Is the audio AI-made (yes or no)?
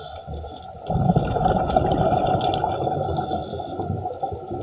no